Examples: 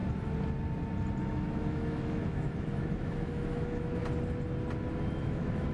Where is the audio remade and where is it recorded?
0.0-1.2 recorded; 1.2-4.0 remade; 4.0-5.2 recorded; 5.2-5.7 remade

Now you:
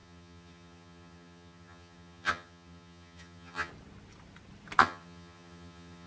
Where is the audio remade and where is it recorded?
0.0-3.7 remade; 3.7-4.8 recorded; 4.8-6.1 remade

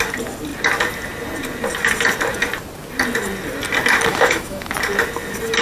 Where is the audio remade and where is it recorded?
0.0-4.1 recorded; 4.1-4.7 remade; 4.7-5.6 recorded